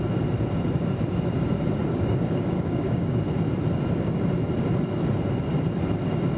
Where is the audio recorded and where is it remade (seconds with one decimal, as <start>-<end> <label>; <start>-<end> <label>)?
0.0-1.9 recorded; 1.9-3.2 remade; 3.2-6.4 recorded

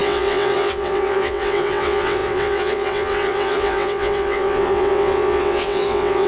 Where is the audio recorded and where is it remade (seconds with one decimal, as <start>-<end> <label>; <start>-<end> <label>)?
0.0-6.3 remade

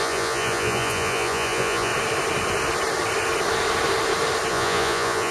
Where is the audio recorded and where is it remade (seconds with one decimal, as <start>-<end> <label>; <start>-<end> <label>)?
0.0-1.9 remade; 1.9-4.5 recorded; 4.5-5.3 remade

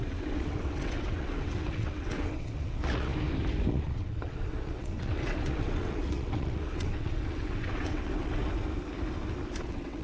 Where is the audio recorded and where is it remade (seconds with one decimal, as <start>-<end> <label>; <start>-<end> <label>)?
0.0-3.1 remade; 3.1-3.7 recorded; 3.7-8.4 remade; 8.4-9.6 recorded; 9.6-10.0 remade

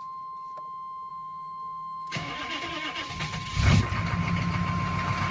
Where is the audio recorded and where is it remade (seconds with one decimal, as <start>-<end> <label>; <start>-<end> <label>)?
0.0-1.1 recorded; 1.1-2.3 remade; 2.3-5.3 recorded

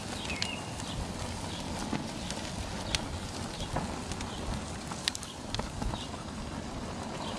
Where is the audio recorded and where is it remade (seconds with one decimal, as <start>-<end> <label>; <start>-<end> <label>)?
0.0-5.0 recorded; 5.0-5.7 remade; 5.7-7.4 recorded

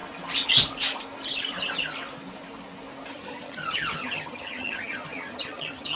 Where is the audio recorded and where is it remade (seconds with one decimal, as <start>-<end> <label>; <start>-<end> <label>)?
0.0-3.1 recorded; 3.1-6.0 remade